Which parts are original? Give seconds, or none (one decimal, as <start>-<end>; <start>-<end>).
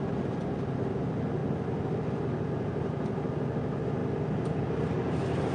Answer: 0.0-5.5